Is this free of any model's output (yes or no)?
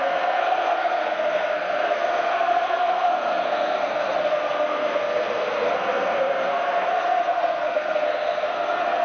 no